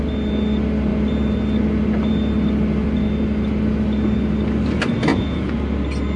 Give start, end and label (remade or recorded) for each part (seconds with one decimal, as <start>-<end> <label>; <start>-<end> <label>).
0.0-5.1 recorded; 5.1-5.6 remade; 5.6-6.2 recorded